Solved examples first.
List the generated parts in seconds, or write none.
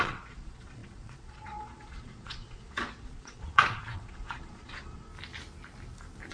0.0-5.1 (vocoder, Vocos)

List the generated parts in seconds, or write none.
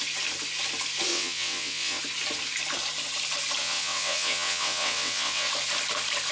1.1-2.0 (vocoder, WaveNeXt); 3.6-5.5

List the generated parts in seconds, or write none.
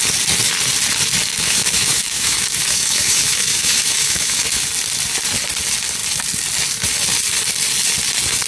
1.3-4.6 (autoencoder, DAC-VAE)